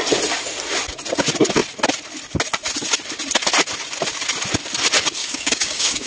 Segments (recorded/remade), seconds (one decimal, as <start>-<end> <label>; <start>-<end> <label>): 0.0-5.2 recorded; 5.2-6.1 remade